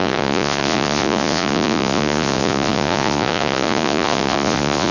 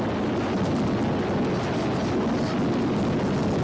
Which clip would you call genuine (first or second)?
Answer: second